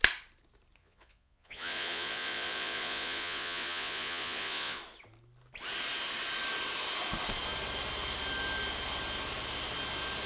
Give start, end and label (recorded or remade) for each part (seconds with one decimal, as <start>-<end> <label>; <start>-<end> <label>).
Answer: 0.0-0.8 recorded; 0.8-4.8 remade; 4.8-10.3 recorded